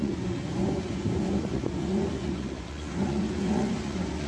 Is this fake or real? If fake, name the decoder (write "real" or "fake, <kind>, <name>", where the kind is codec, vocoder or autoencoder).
fake, vocoder, Vocos